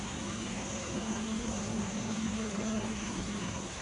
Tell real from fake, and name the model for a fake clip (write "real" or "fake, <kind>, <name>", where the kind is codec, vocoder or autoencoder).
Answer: fake, codec, SNAC